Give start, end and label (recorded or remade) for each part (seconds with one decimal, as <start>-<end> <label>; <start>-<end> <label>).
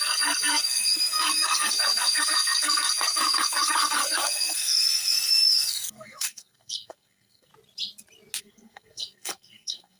0.0-7.5 remade; 7.5-8.4 recorded; 8.4-10.0 remade